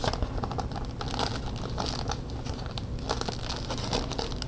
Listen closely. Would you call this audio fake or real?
real